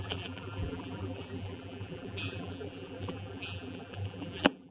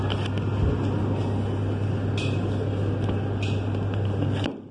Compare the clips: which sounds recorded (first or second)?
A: second